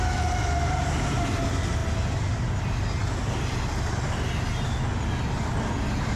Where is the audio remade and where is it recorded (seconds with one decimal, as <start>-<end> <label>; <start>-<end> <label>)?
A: 0.0-3.0 recorded; 3.0-3.6 remade; 3.6-6.2 recorded